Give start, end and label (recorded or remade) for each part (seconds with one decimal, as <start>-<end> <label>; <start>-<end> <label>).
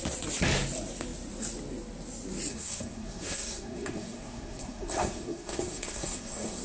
0.0-2.5 recorded; 2.5-6.6 remade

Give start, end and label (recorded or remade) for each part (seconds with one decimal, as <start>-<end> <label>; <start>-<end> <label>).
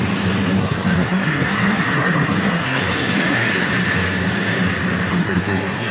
0.0-0.6 recorded; 0.6-3.7 remade; 3.7-5.1 recorded; 5.1-5.9 remade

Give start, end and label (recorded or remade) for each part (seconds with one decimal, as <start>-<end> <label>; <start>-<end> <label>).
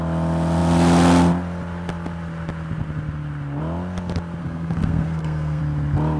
0.0-4.4 recorded; 4.4-5.6 remade; 5.6-6.2 recorded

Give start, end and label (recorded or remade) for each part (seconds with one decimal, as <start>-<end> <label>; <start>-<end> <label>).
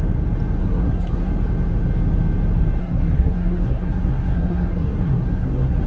0.0-0.6 recorded; 0.6-1.3 remade; 1.3-2.8 recorded; 2.8-5.9 remade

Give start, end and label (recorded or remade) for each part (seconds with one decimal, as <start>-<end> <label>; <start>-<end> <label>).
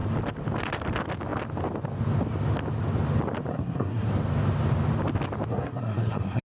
0.0-3.5 recorded; 3.5-4.1 remade; 4.1-5.5 recorded; 5.5-6.4 remade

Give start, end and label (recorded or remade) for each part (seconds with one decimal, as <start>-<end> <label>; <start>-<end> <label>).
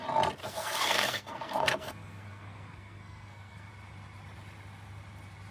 0.0-0.4 recorded; 0.4-3.7 remade; 3.7-5.5 recorded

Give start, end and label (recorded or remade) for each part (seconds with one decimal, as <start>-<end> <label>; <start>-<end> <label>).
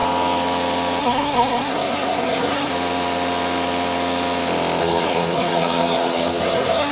0.0-1.0 recorded; 1.0-2.7 remade; 2.7-4.8 recorded; 4.8-6.9 remade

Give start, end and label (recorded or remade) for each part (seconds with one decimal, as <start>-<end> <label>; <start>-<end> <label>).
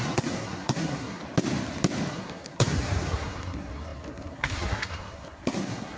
0.0-1.2 remade; 1.2-2.1 recorded; 2.1-6.0 remade